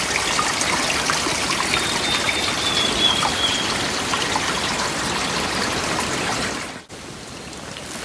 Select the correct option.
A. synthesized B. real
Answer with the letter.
B